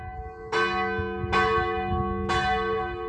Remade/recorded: recorded